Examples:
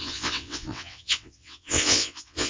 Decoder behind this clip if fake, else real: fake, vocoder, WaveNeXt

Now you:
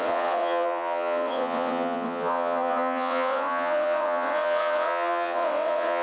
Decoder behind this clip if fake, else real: fake, vocoder, WaveNeXt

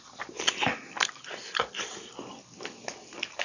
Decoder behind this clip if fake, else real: real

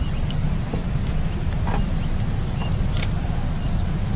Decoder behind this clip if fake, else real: real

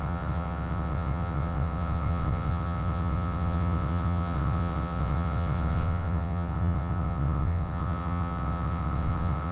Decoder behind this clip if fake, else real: fake, vocoder, WaveNeXt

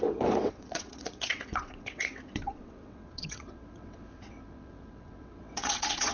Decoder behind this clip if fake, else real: fake, vocoder, WaveNeXt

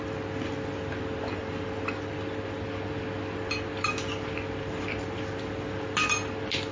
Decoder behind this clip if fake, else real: real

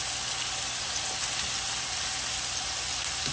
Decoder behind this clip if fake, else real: real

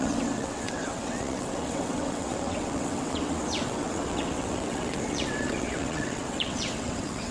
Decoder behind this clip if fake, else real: fake, vocoder, WaveNeXt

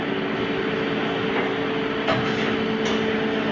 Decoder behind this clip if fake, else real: real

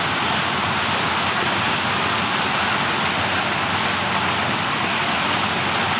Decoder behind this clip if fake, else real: real